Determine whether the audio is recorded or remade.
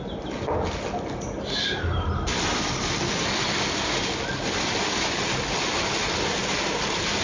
recorded